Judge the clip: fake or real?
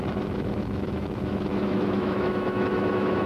fake